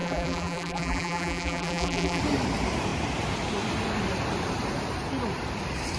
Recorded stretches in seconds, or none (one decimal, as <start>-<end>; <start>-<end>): 2.2-6.0